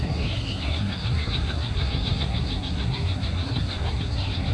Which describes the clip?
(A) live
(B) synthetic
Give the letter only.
B